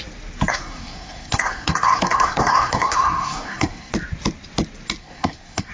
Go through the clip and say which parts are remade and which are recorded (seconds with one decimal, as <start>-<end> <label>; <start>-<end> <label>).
0.0-0.5 recorded; 0.5-3.9 remade; 3.9-5.0 recorded; 5.0-5.7 remade